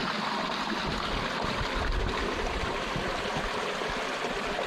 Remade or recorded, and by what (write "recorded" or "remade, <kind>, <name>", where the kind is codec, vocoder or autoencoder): recorded